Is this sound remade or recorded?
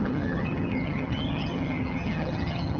remade